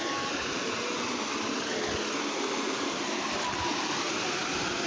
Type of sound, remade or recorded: recorded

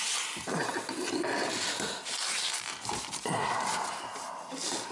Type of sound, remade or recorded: recorded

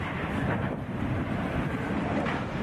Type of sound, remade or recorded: remade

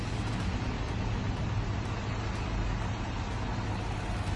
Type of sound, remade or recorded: recorded